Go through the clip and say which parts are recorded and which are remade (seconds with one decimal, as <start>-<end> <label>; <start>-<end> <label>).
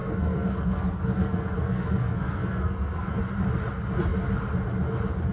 0.0-3.2 remade; 3.2-5.3 recorded